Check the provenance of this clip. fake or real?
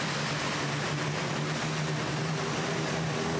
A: fake